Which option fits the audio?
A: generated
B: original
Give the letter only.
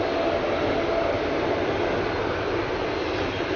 B